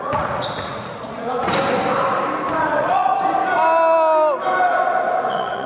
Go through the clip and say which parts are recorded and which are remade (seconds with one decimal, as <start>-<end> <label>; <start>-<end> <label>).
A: 0.0-1.5 remade; 1.5-2.6 recorded; 2.6-3.1 remade; 3.1-5.3 recorded; 5.3-5.7 remade